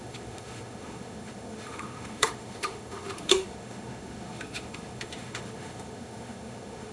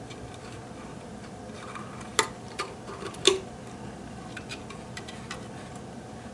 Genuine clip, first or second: second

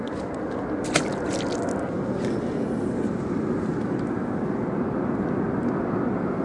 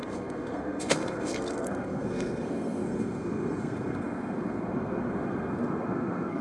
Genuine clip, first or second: first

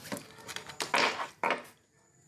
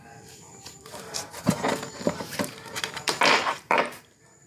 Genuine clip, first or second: first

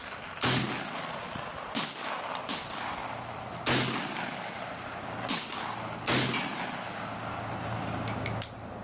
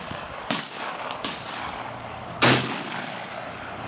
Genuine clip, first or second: first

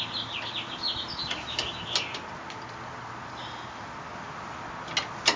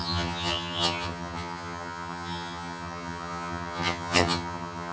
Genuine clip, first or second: first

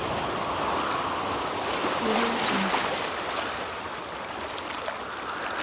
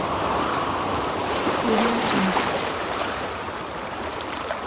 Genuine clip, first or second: first